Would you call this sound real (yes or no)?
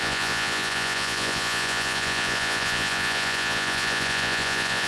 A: no